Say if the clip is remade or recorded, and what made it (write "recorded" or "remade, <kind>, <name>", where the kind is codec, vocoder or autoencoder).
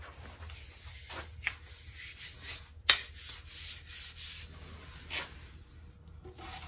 recorded